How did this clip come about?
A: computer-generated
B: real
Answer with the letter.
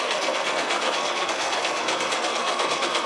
A